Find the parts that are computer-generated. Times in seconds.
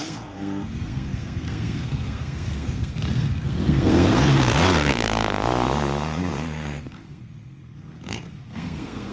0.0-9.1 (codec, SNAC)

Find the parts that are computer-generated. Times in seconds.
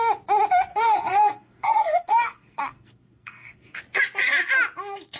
0.7-3.8 (codec, SNAC)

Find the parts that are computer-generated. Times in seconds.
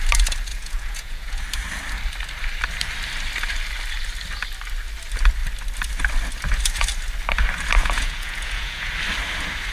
0.5-1.4 (vocoder, Vocos); 7.8-8.9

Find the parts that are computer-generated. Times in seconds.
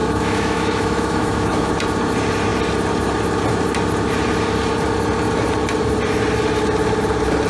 0.0-1.7 (autoencoder, DAC-VAE)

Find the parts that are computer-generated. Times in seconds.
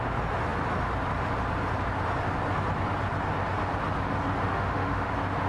4.5-5.1 (autoencoder, DAC-VAE)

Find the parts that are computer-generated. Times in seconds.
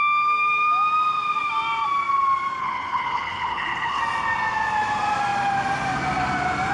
2.6-4.0 (codec, HILCodec)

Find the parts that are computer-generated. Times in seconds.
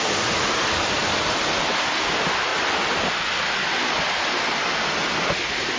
0.0-2.5 (vocoder, BigVGAN v2)